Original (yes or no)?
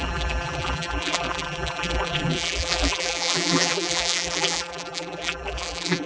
no